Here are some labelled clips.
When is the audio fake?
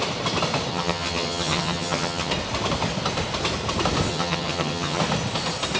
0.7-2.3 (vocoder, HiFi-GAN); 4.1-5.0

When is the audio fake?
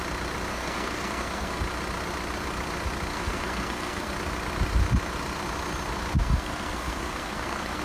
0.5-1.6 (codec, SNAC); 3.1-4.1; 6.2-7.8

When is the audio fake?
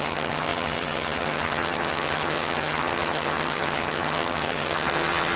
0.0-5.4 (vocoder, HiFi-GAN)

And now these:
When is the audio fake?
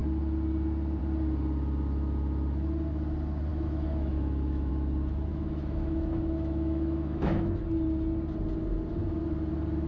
3.5-4.7 (autoencoder, DAC-VAE); 5.3-7.6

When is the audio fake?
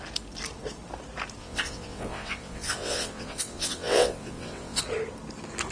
1.4-4.8 (vocoder, WaveNeXt)